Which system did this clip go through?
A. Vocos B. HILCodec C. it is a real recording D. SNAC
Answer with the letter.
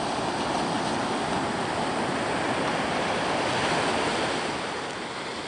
C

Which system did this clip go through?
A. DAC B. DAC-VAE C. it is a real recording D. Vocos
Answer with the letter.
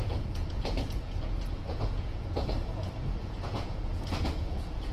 D